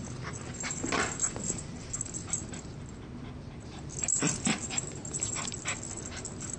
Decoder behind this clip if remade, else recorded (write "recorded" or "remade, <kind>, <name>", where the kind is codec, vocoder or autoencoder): recorded